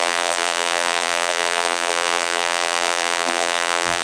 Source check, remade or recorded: remade